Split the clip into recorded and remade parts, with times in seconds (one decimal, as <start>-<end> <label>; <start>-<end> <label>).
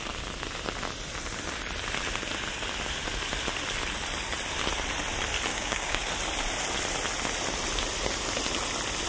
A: 0.0-5.5 recorded; 5.5-6.1 remade; 6.1-9.1 recorded